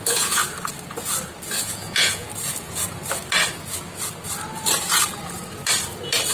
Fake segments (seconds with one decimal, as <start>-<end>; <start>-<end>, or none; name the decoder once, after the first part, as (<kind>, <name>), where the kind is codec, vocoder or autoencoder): 0.0-0.4 (vocoder, Vocos); 1.6-2.3